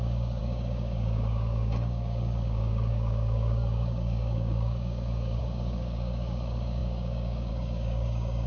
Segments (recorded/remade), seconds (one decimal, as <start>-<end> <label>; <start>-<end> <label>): 0.0-8.5 remade